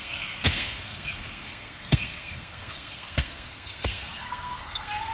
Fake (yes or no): yes